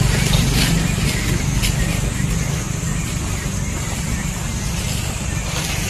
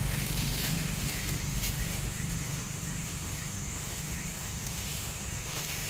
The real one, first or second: first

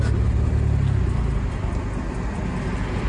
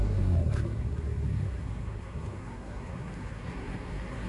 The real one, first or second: first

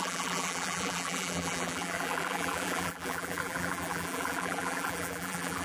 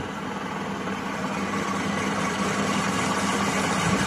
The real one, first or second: second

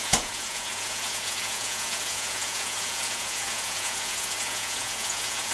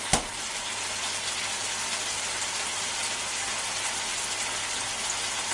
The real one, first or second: second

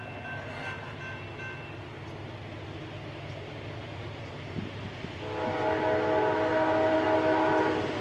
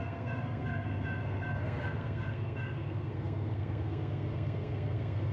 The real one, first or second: first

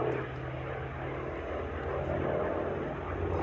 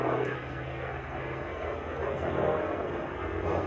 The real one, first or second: first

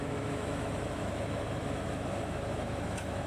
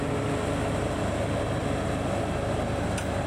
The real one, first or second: second